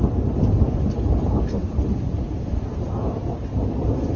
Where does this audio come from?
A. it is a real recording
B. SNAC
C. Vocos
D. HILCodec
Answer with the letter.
A